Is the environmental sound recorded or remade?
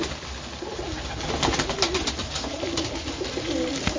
recorded